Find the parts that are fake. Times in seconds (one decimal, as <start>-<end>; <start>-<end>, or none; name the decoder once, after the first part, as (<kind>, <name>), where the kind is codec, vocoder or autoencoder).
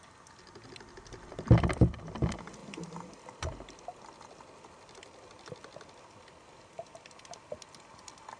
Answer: none